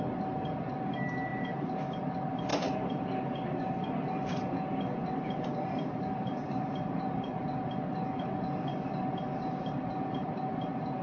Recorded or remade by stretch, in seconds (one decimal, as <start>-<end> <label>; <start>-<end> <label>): 0.0-1.3 recorded; 1.3-2.1 remade; 2.1-2.5 recorded; 2.5-3.0 remade; 3.0-5.0 recorded; 5.0-7.6 remade; 7.6-8.7 recorded; 8.7-10.3 remade; 10.3-11.0 recorded